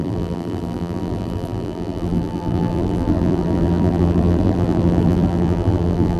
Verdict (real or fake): fake